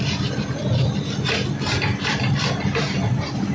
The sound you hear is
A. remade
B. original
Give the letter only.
B